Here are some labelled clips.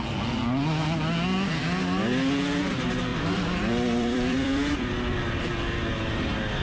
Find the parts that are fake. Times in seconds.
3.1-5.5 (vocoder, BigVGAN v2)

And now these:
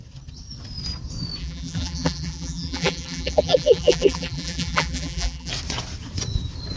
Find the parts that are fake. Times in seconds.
1.4-5.5 (vocoder, BigVGAN v2)